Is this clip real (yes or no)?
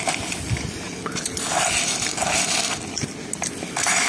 yes